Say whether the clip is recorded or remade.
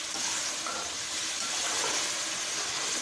recorded